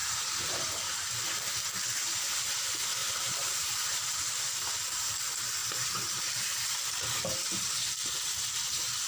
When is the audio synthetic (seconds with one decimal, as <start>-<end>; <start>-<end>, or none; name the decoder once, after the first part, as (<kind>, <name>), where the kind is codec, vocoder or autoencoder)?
0.0-1.1 (vocoder, BigVGAN v2); 3.0-3.8; 5.6-9.1